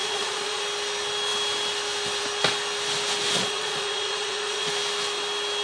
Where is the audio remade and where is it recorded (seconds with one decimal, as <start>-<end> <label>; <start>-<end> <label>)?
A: 0.0-0.6 remade; 0.6-3.4 recorded; 3.4-4.7 remade; 4.7-5.6 recorded